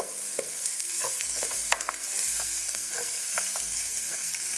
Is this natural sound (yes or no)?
no